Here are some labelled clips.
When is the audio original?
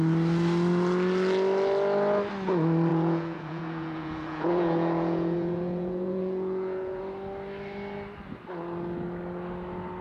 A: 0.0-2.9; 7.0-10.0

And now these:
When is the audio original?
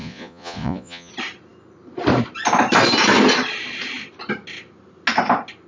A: 1.1-5.7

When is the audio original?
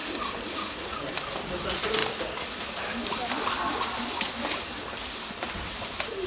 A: 0.0-6.3